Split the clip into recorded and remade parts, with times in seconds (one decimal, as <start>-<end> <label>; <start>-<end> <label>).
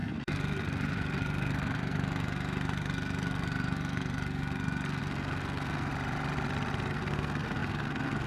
0.0-5.9 remade; 5.9-6.9 recorded; 6.9-8.3 remade